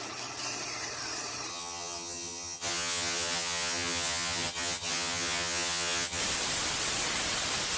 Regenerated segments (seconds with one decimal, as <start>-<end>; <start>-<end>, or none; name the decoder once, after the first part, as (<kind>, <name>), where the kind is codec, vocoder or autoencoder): 1.5-6.2 (vocoder, HiFi-GAN)